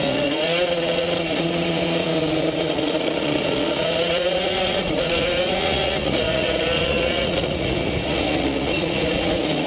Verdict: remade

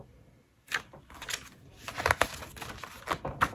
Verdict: remade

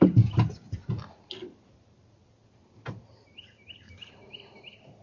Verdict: recorded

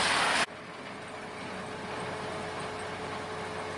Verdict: recorded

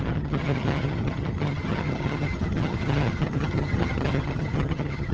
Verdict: remade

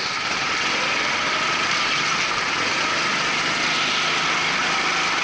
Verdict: recorded